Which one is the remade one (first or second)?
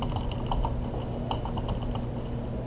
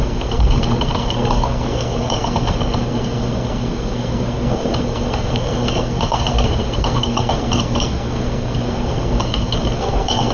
second